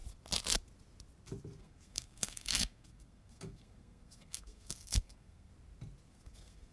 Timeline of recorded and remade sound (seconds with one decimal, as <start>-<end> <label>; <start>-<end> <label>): 0.0-1.6 recorded; 1.6-5.5 remade; 5.5-6.1 recorded; 6.1-6.7 remade